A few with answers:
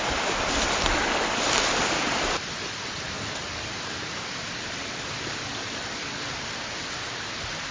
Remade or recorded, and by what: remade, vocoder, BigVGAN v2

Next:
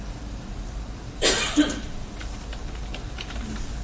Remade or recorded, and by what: remade, vocoder, BigVGAN v2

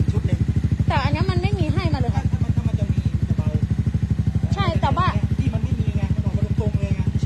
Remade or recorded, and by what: recorded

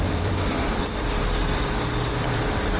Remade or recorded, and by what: remade, vocoder, BigVGAN v2